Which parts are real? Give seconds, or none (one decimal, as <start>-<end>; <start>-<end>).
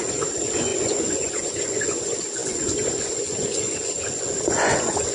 none